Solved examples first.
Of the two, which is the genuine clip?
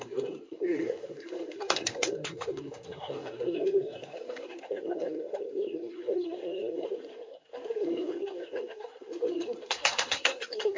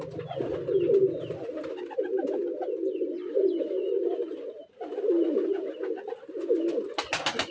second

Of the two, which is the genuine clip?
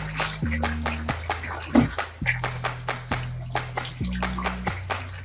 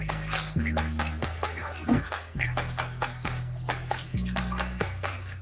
first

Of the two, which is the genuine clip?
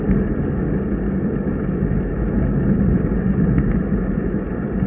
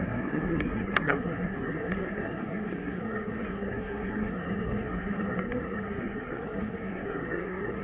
first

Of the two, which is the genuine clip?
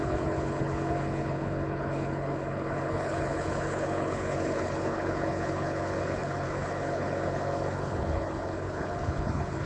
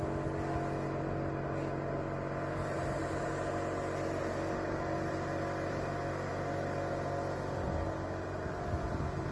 second